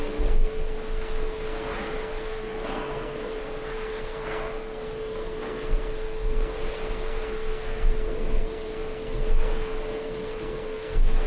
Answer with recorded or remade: remade